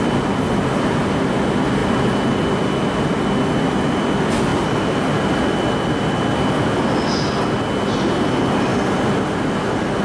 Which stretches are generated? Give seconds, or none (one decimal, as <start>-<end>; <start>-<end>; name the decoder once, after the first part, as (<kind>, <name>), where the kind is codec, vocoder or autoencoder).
none